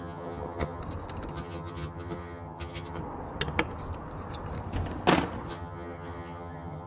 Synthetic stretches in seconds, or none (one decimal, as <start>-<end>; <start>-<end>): 0.0-0.8; 1.3-3.0; 5.5-6.9